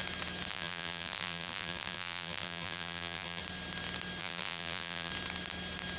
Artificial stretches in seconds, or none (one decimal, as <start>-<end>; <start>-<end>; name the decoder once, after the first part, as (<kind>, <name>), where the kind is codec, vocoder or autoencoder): 0.5-3.4 (vocoder, BigVGAN v2); 4.2-5.1